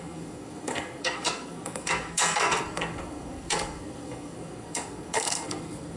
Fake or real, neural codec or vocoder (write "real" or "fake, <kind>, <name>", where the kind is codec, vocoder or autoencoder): fake, codec, SNAC